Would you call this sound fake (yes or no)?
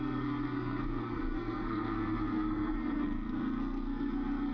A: yes